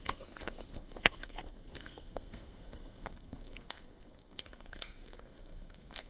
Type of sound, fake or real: fake